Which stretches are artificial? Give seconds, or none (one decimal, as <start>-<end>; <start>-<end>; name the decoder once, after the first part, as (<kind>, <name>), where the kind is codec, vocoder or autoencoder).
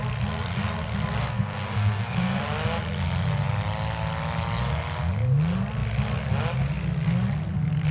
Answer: 1.2-2.4 (codec, SNAC)